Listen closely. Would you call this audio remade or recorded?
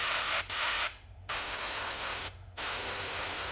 remade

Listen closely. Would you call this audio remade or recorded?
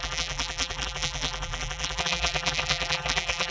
remade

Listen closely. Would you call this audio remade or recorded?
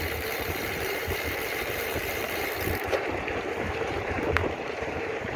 remade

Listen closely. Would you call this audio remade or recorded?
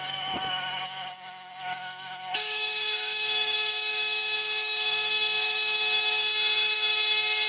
remade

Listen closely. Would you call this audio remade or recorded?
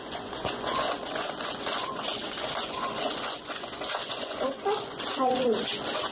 remade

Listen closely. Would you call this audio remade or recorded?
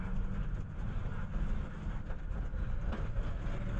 recorded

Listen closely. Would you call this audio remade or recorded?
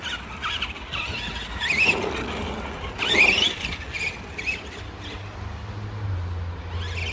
recorded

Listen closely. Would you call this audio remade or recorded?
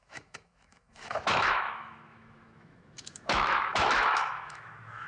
remade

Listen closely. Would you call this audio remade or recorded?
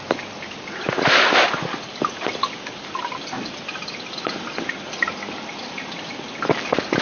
recorded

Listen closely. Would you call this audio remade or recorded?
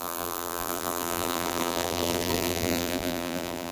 remade